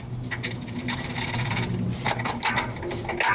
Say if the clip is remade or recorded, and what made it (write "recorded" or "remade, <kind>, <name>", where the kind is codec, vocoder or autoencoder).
recorded